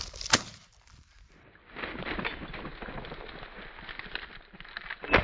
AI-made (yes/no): no